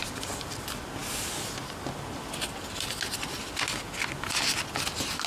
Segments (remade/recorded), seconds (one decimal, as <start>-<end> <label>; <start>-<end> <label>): 0.0-5.3 recorded